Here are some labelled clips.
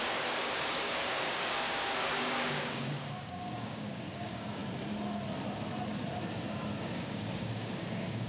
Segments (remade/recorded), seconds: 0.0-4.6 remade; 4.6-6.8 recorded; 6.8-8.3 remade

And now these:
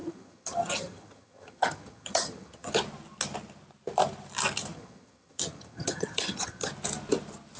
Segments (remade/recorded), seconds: 0.0-2.7 remade; 2.7-4.7 recorded; 4.7-6.7 remade; 6.7-7.6 recorded

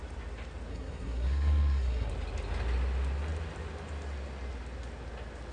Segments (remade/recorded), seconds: 0.0-0.7 recorded; 0.7-2.1 remade; 2.1-5.5 recorded

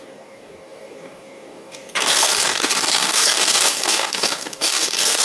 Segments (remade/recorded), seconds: 0.0-5.2 remade